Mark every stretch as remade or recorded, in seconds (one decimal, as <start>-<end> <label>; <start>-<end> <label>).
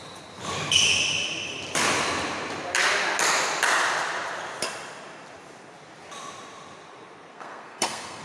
0.0-7.3 recorded; 7.3-8.2 remade